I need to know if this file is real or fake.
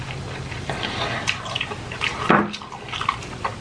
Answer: real